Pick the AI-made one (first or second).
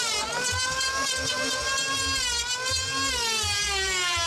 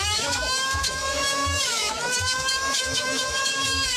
second